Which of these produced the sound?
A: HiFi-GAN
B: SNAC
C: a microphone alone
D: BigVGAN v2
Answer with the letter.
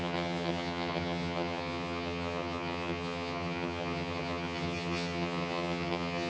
A